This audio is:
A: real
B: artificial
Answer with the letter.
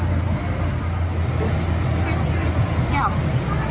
A